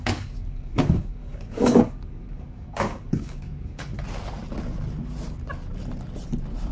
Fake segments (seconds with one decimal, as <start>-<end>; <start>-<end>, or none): 0.0-3.9